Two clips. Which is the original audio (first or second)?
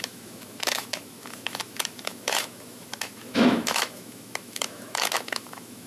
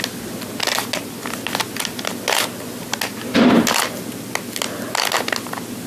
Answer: second